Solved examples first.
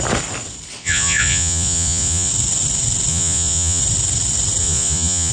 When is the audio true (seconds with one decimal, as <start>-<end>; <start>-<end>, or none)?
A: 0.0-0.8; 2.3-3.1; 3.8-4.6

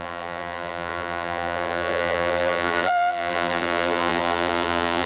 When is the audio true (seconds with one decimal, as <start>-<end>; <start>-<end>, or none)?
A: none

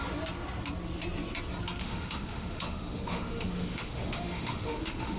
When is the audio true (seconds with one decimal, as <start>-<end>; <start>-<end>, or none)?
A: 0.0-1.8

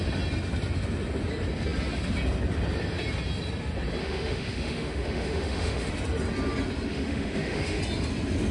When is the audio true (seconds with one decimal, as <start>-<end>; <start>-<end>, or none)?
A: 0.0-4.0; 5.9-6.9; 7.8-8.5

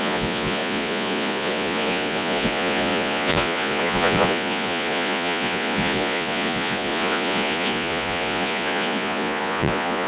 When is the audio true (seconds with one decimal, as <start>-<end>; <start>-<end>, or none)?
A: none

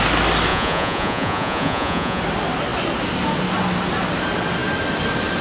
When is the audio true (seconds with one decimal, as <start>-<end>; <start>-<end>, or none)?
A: 0.0-0.5; 2.2-5.4